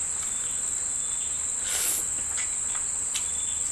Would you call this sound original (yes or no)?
yes